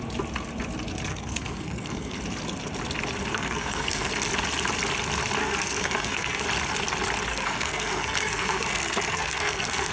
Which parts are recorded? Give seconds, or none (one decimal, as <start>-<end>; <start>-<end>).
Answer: 0.0-1.1; 2.2-3.3; 4.1-5.4; 6.4-7.3